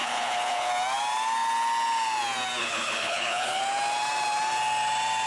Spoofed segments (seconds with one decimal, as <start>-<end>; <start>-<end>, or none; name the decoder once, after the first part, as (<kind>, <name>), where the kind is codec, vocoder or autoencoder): 0.0-0.7 (codec, HILCodec); 2.6-3.6